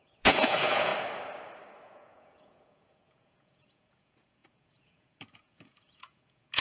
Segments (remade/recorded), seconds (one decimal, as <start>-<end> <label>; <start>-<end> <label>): 0.0-0.9 remade; 0.9-1.8 recorded; 1.8-6.6 remade